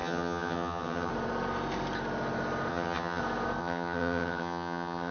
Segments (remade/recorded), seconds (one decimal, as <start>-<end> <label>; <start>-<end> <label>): 0.0-1.1 remade; 1.1-2.7 recorded; 2.7-3.2 remade; 3.2-3.6 recorded; 3.6-5.1 remade